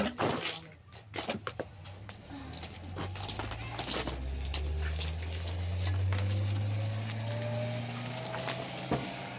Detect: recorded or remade recorded